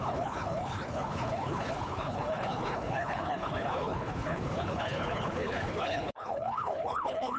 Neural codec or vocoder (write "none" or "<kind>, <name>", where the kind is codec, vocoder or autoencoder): codec, HILCodec